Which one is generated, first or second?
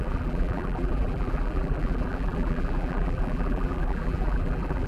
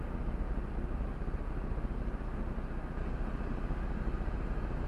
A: first